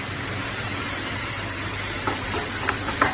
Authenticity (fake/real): fake